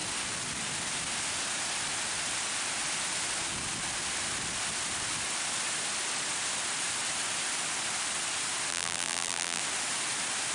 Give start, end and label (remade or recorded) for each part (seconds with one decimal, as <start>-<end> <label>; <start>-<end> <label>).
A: 0.0-8.7 recorded; 8.7-9.6 remade; 9.6-10.5 recorded